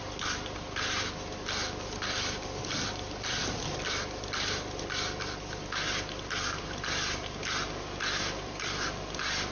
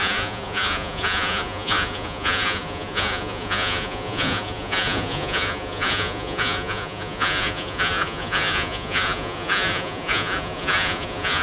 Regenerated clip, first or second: second